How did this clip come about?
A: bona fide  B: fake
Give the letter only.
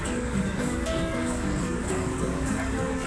B